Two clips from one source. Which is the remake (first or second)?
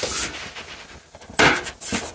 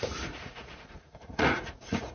second